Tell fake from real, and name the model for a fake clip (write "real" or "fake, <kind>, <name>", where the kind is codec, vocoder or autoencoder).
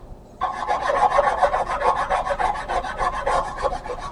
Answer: real